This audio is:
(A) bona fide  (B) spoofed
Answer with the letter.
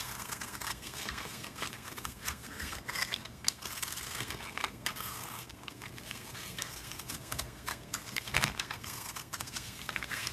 B